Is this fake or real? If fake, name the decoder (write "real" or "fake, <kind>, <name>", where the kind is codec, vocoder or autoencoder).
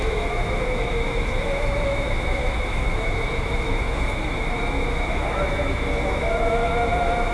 fake, autoencoder, DAC-VAE